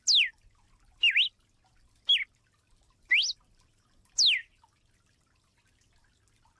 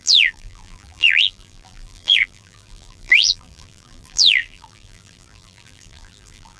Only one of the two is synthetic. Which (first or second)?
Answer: second